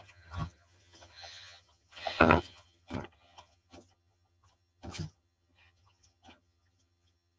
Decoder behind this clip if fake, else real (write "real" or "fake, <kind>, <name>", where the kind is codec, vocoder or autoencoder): fake, vocoder, HiFi-GAN